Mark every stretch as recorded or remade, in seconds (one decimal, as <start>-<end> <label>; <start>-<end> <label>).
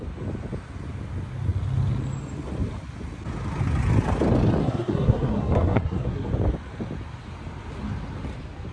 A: 0.0-4.6 recorded; 4.6-6.3 remade; 6.3-8.7 recorded